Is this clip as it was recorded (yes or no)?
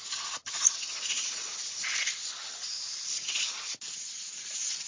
yes